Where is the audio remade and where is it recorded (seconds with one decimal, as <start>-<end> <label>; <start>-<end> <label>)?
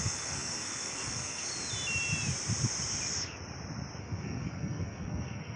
0.0-1.5 remade; 1.5-4.0 recorded; 4.0-5.6 remade